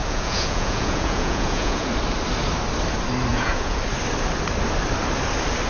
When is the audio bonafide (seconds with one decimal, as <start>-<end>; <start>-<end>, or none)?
1.9-3.3; 3.8-5.7